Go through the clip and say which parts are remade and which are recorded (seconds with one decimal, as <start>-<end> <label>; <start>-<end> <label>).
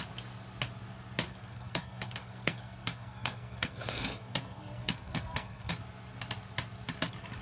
0.0-1.3 recorded; 1.3-5.7 remade; 5.7-7.4 recorded